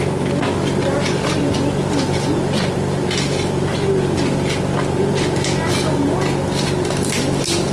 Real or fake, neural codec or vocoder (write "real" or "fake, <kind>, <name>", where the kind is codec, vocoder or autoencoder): real